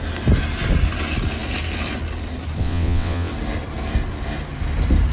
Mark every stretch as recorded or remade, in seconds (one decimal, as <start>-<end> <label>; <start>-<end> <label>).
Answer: 0.0-2.6 recorded; 2.6-3.3 remade; 3.3-5.1 recorded